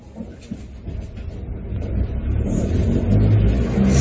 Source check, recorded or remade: recorded